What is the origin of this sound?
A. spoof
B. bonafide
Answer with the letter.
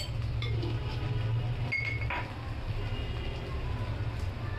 B